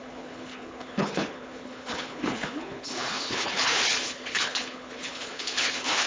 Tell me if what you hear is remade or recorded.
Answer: remade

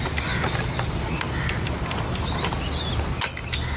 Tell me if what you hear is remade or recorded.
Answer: recorded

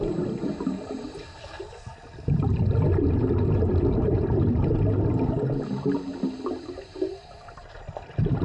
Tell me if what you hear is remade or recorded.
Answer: recorded